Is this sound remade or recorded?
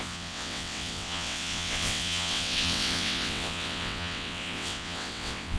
remade